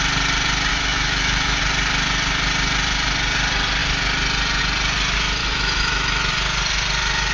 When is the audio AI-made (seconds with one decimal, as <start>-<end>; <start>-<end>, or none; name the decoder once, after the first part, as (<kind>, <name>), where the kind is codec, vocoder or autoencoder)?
0.7-1.6 (autoencoder, DAC-VAE); 5.4-6.3